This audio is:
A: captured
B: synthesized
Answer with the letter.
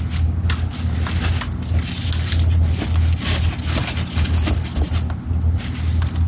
A